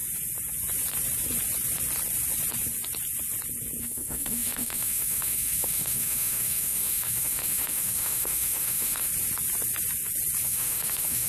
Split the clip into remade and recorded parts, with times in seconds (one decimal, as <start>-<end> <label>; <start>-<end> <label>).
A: 0.0-3.8 recorded; 3.8-9.1 remade; 9.1-10.4 recorded; 10.4-11.3 remade

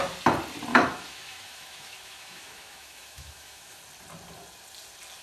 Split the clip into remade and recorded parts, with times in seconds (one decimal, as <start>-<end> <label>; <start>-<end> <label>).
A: 0.0-0.7 recorded; 0.7-3.8 remade; 3.8-5.2 recorded